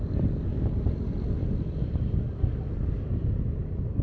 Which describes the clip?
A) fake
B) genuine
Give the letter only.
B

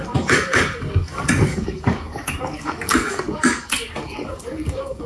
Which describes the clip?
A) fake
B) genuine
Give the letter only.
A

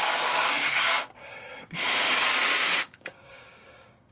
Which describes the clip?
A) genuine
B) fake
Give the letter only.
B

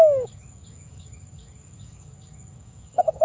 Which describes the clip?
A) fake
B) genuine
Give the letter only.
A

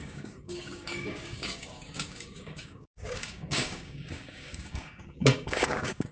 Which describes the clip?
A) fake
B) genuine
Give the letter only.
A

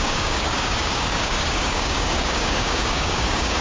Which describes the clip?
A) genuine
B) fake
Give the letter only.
B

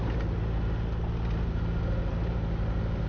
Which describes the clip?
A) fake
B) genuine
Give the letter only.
B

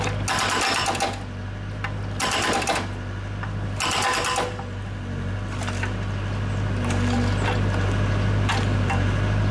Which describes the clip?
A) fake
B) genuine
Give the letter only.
B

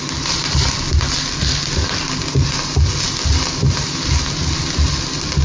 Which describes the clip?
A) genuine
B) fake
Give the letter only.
A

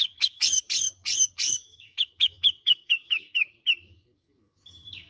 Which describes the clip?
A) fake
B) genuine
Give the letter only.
A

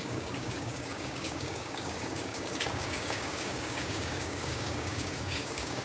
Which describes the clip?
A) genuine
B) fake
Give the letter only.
B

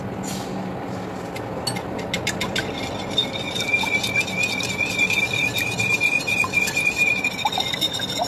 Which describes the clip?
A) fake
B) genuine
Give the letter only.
B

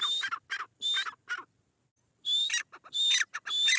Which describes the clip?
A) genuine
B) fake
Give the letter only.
A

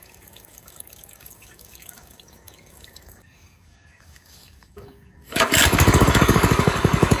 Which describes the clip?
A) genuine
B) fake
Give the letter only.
B